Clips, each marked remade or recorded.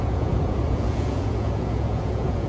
remade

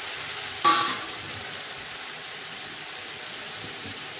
recorded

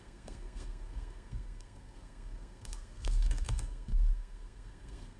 remade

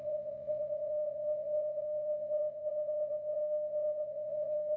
remade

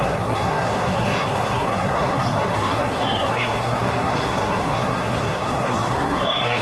remade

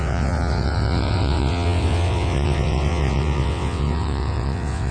remade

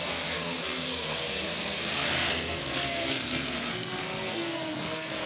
remade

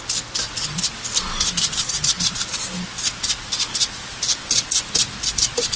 recorded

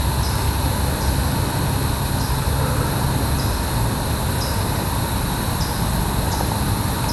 recorded